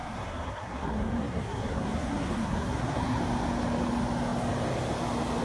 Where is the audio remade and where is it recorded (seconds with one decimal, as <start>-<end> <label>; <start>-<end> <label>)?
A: 0.0-3.2 remade; 3.2-5.4 recorded